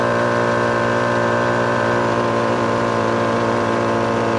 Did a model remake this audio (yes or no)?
yes